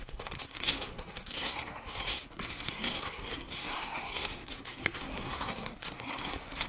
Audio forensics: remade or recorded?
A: remade